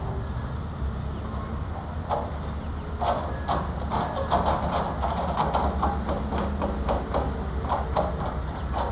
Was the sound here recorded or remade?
recorded